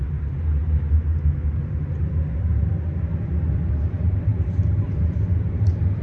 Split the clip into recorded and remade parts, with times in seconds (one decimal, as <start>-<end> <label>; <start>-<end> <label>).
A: 0.0-6.0 recorded